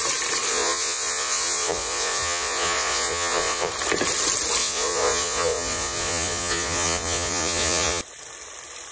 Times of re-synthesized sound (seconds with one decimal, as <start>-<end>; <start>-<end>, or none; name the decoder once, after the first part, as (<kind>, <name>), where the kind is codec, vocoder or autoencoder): 0.5-3.7 (vocoder, Vocos); 4.6-8.0